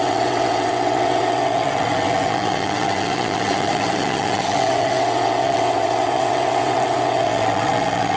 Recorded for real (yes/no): no